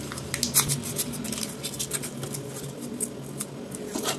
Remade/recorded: recorded